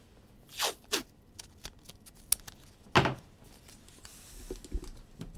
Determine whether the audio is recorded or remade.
recorded